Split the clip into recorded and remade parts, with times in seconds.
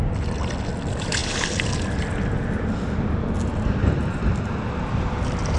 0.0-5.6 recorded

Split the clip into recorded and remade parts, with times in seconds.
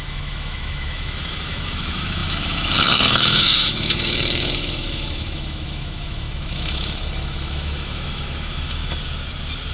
0.0-8.8 remade; 8.8-9.7 recorded